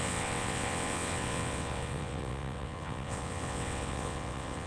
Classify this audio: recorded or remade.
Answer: remade